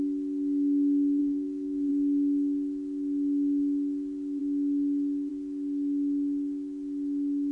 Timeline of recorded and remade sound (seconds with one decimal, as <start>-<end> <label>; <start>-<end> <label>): 0.0-1.2 recorded; 1.2-1.9 remade; 1.9-7.5 recorded